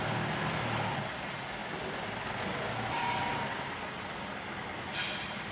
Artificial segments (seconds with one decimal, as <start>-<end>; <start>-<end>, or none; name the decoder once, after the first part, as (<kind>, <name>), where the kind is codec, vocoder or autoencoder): none